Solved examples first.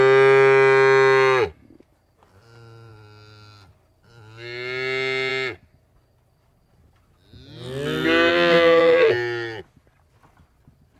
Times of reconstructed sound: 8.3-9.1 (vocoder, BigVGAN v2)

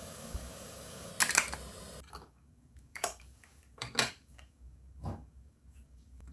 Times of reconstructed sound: 0.0-1.1 (codec, DAC); 2.1-6.3

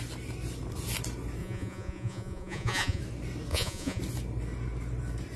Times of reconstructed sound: 1.4-3.0 (vocoder, Vocos); 3.5-4.0

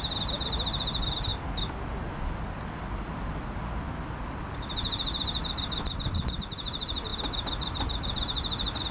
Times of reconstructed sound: 0.0-1.3 (vocoder, BigVGAN v2); 5.2-8.9